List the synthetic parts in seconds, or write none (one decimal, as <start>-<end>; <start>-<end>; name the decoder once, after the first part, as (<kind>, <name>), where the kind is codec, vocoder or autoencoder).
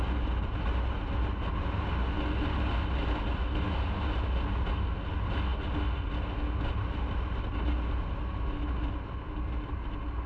none